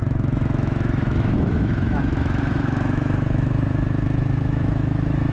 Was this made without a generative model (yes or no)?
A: no